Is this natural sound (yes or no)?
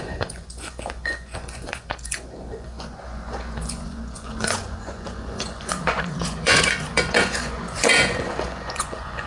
no